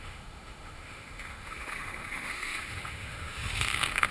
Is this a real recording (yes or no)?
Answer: no